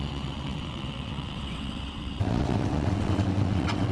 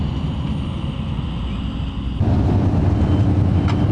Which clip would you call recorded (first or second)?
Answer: second